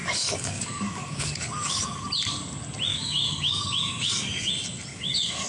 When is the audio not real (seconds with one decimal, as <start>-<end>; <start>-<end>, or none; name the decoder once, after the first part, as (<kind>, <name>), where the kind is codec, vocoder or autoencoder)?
0.0-2.1 (codec, DAC); 2.9-4.5; 4.9-5.5